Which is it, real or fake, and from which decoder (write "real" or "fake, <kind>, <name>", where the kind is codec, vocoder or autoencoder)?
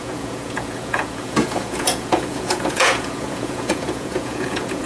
fake, vocoder, Vocos